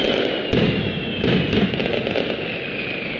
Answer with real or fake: real